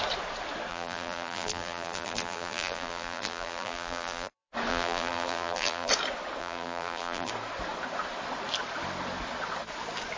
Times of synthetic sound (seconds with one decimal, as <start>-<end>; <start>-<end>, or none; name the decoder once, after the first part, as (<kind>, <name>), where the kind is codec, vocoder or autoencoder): 0.7-4.3 (vocoder, BigVGAN v2); 4.7-5.9; 6.4-7.3